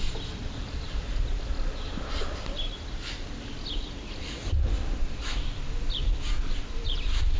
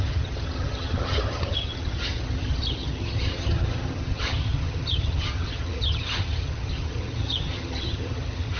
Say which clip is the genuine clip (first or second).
first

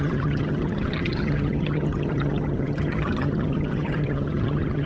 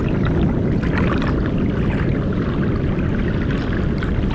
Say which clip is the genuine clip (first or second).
second